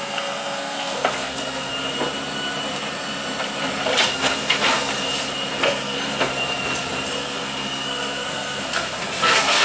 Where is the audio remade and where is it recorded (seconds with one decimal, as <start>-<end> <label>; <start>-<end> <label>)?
0.0-1.7 remade; 1.7-4.1 recorded; 4.1-4.9 remade; 4.9-5.6 recorded; 5.6-6.3 remade; 6.3-7.2 recorded; 7.2-9.6 remade